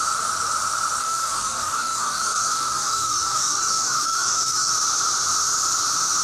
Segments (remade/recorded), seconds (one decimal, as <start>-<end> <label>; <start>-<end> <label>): 0.0-1.0 recorded; 1.0-4.7 remade; 4.7-6.2 recorded